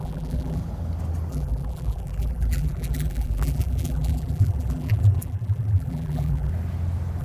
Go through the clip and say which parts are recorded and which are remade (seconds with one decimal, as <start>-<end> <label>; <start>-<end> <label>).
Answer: 0.0-0.6 remade; 0.6-1.3 recorded; 1.3-6.5 remade; 6.5-7.2 recorded